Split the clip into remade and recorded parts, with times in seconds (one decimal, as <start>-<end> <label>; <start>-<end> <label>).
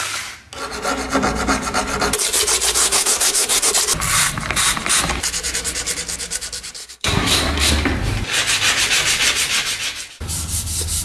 0.0-2.8 recorded; 2.8-3.7 remade; 3.7-6.8 recorded; 6.8-7.7 remade; 7.7-11.0 recorded